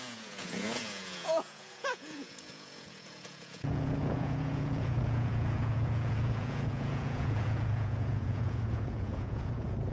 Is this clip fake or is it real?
fake